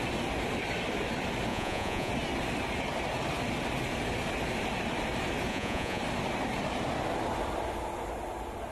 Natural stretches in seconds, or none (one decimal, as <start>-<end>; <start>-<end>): 0.0-1.5; 2.1-5.5; 6.0-8.7